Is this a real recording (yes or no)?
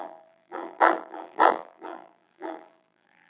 no